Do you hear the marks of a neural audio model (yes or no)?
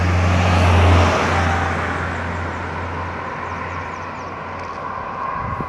no